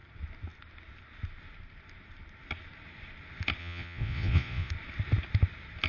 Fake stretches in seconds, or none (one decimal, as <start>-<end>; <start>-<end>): 3.6-4.7